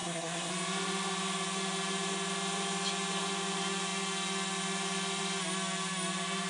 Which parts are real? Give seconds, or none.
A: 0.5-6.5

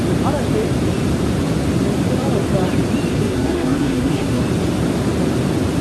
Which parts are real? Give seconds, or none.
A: 0.0-3.1; 4.4-5.8